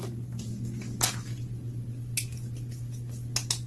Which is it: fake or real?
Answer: real